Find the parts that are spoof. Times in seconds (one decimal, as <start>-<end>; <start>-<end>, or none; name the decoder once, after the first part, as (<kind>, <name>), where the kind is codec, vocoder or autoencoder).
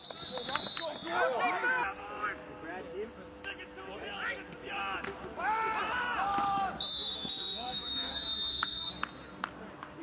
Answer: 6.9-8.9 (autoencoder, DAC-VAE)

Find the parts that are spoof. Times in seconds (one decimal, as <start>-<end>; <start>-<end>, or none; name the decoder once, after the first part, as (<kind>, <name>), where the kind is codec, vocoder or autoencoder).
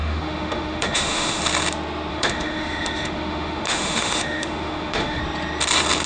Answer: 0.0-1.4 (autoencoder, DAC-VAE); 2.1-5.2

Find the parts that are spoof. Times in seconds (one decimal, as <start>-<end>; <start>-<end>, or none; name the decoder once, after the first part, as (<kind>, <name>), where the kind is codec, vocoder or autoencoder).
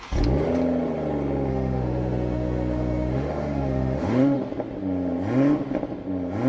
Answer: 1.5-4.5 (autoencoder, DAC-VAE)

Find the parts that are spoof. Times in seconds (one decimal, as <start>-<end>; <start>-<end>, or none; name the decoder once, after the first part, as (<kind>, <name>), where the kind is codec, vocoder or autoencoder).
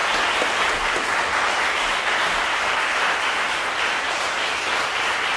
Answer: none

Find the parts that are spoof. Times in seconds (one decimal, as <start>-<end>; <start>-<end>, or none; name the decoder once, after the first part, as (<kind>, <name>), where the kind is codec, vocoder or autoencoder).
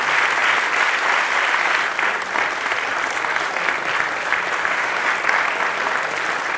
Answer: 4.6-5.1 (autoencoder, DAC-VAE)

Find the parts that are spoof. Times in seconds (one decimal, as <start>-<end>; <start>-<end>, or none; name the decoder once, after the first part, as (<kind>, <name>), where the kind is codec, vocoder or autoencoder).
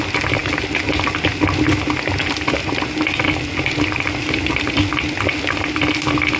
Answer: none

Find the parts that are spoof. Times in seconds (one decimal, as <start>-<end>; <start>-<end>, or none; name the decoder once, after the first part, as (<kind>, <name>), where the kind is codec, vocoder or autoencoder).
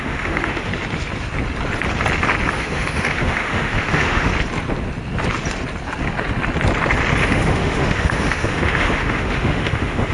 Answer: 0.0-0.7 (autoencoder, DAC-VAE); 2.5-4.3; 7.2-10.1